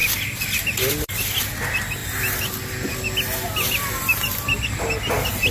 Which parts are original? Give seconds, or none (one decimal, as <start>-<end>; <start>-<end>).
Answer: 0.0-5.5